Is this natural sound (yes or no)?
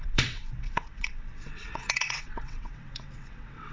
no